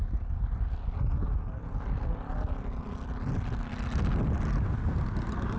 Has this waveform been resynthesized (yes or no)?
no